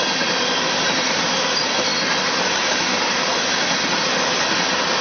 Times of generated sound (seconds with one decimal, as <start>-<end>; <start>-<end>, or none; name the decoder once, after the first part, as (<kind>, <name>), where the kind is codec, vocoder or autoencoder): none